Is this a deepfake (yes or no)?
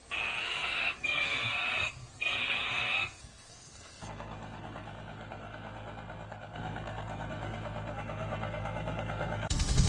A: yes